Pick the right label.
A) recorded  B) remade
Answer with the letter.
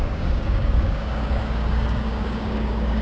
B